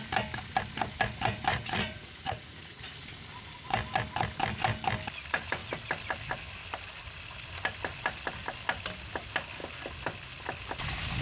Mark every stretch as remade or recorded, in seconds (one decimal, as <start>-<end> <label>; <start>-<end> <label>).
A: 0.0-1.5 recorded; 1.5-2.8 remade; 2.8-11.2 recorded